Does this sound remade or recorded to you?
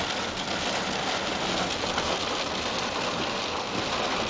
recorded